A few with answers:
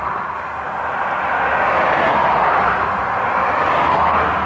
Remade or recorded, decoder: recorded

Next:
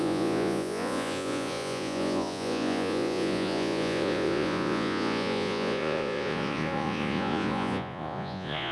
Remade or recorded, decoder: remade, vocoder, Vocos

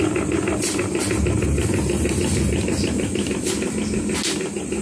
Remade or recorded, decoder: recorded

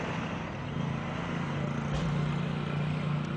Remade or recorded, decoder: recorded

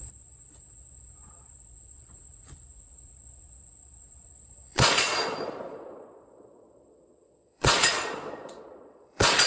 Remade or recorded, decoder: remade, vocoder, Vocos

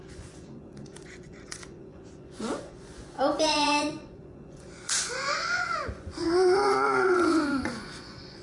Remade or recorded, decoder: remade, vocoder, Vocos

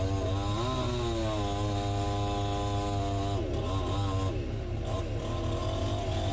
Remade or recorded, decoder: recorded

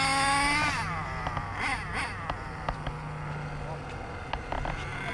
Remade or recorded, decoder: recorded